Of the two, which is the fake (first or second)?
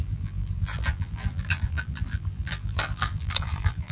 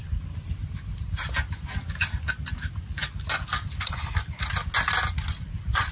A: first